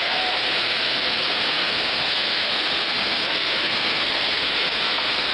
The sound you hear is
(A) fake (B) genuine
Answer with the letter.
A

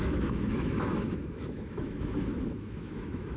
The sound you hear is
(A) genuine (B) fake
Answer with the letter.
B